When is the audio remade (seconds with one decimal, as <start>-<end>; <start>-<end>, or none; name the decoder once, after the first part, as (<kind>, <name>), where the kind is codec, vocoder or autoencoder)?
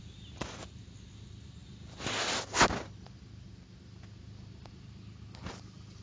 none